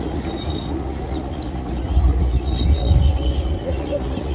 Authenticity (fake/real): fake